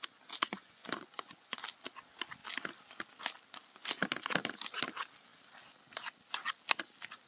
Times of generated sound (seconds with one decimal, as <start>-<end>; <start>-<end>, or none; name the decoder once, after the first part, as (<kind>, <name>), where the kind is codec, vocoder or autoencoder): 0.6-1.6 (vocoder, Vocos)